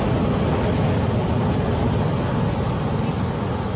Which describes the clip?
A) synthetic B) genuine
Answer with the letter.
B